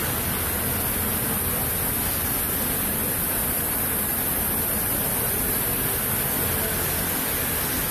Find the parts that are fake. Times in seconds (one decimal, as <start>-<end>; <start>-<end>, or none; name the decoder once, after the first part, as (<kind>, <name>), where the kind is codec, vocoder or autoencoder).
none